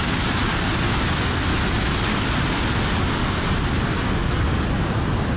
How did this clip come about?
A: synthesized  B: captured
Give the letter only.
B